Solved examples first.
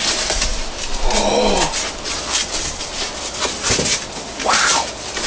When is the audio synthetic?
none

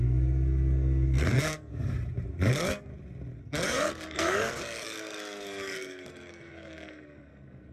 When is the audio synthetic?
0.0-1.7 (codec, SNAC); 2.5-2.9; 3.4-7.7

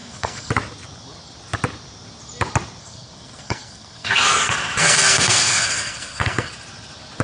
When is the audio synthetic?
0.0-0.5 (codec, SNAC); 2.8-6.5

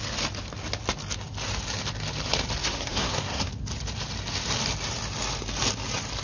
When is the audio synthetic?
2.6-3.5 (codec, SNAC)

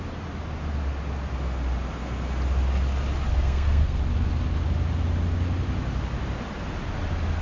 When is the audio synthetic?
3.3-4.0 (codec, SNAC)